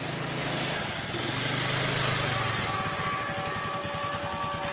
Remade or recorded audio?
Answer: recorded